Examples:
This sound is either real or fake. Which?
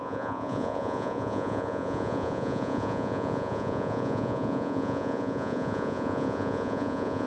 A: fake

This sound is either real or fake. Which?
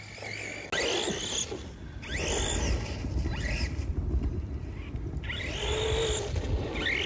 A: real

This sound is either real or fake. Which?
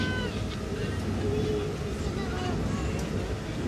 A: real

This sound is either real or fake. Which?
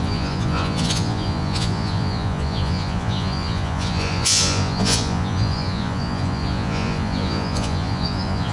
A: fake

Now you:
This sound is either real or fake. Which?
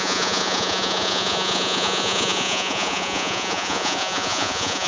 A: fake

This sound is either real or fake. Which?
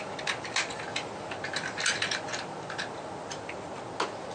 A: real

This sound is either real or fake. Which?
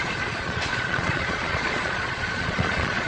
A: fake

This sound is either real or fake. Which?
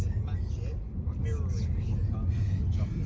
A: real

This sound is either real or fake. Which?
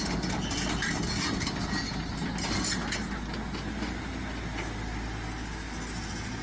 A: real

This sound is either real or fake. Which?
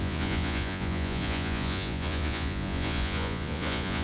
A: fake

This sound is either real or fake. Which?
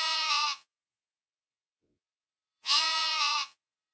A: fake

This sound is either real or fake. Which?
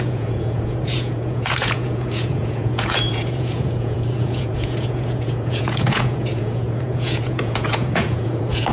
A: fake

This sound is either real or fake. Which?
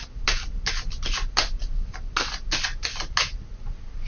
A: real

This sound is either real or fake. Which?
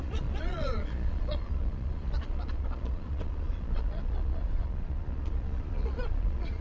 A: fake